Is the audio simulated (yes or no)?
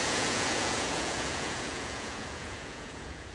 yes